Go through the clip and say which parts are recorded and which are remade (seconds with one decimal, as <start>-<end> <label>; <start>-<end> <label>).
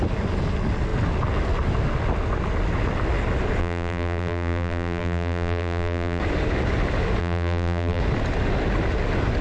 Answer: 0.0-3.6 recorded; 3.6-6.2 remade; 6.2-7.2 recorded; 7.2-8.0 remade; 8.0-9.4 recorded